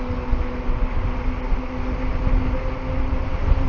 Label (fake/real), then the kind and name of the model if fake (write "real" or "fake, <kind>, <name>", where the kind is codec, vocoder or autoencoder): real